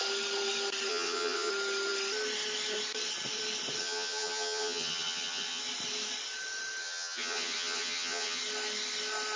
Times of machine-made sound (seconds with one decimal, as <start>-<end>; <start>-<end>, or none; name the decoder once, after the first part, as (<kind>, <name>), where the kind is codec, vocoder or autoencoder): 0.9-1.5 (vocoder, HiFi-GAN); 3.8-5.6; 6.8-8.4

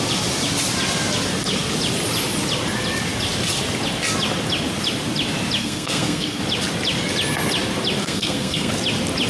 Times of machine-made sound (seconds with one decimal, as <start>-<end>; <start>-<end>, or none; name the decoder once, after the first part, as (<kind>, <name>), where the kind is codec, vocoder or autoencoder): 5.6-6.4 (codec, SNAC); 8.0-8.7

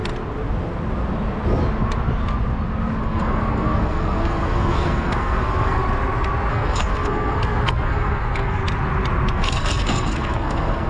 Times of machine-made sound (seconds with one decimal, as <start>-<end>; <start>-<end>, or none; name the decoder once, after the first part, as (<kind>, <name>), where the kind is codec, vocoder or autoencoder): 3.0-5.8 (codec, SNAC); 6.5-8.6; 9.3-10.9

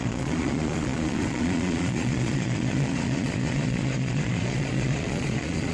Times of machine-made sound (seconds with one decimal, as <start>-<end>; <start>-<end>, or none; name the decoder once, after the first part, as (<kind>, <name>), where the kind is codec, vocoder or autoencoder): 0.0-5.7 (vocoder, Vocos)

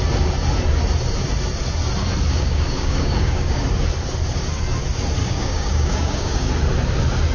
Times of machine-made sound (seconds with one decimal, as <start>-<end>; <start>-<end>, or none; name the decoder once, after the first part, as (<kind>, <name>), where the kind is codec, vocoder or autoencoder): 2.3-3.6 (codec, DAC); 5.2-6.5

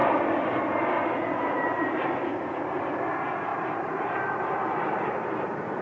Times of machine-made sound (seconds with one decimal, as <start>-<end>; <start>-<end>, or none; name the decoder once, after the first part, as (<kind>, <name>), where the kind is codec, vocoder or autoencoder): 3.5-4.3 (vocoder, BigVGAN v2)